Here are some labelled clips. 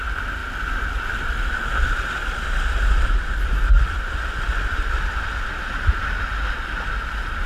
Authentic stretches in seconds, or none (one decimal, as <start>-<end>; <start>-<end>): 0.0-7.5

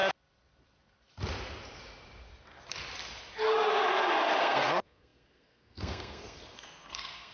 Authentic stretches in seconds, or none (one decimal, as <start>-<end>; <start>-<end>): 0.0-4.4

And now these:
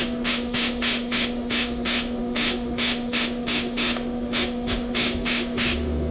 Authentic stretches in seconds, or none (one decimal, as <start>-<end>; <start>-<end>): none